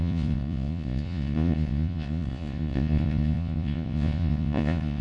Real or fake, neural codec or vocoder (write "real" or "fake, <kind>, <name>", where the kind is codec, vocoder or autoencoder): fake, vocoder, Vocos